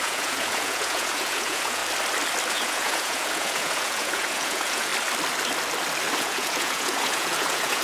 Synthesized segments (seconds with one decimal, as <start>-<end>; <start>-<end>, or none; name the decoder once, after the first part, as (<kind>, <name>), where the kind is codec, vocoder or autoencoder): 0.0-1.8 (vocoder, Vocos); 2.5-4.9; 6.2-7.8